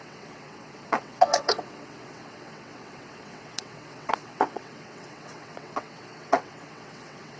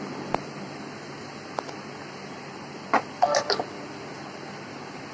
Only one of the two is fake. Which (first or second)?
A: first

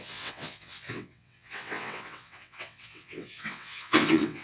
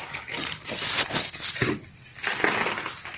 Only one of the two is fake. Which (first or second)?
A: first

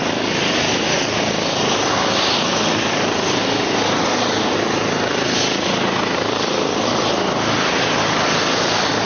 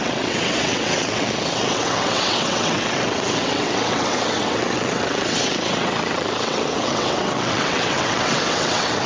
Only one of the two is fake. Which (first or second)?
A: second